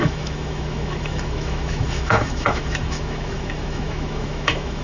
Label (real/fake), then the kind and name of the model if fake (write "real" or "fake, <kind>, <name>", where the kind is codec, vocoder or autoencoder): fake, autoencoder, DAC-VAE